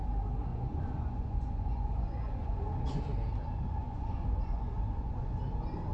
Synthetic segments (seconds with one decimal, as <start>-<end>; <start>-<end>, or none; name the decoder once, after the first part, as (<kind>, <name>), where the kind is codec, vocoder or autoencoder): 0.5-3.0 (vocoder, Vocos); 3.8-5.4